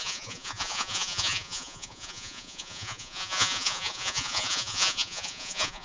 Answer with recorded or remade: remade